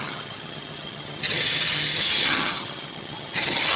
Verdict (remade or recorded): remade